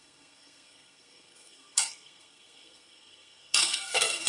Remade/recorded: remade